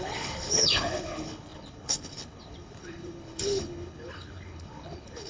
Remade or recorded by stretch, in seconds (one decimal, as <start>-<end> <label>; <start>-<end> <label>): 0.0-5.3 remade